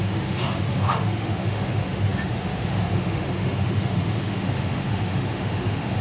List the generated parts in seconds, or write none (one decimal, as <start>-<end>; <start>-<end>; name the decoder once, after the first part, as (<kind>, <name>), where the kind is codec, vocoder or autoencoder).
0.0-6.0 (autoencoder, DAC-VAE)